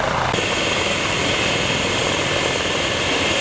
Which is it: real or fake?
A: fake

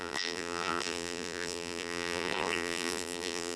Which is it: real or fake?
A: fake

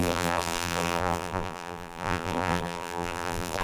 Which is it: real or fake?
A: fake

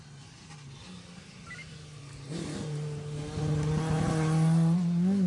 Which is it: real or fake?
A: real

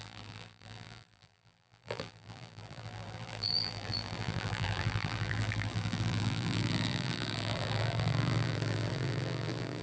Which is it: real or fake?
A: fake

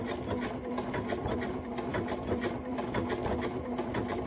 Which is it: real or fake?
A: fake